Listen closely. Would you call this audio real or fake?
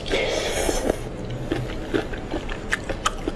real